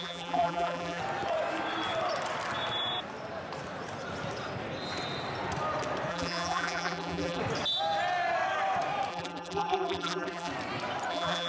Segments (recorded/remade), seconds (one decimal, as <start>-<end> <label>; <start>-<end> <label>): 0.0-1.0 remade; 1.0-6.1 recorded; 6.1-7.4 remade; 7.4-9.1 recorded; 9.1-10.5 remade; 10.5-11.1 recorded; 11.1-11.5 remade